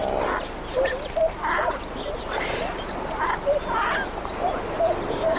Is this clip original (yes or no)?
yes